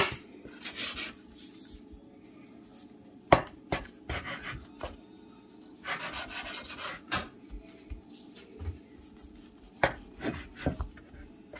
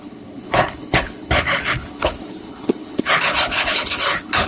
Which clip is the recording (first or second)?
first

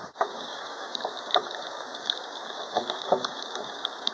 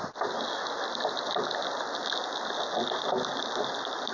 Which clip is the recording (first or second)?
second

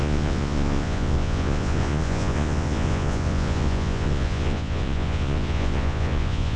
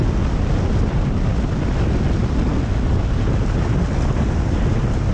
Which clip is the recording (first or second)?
second